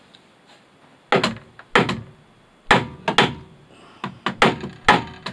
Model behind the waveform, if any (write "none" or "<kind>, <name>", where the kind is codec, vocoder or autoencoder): none